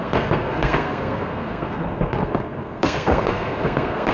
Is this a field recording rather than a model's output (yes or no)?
no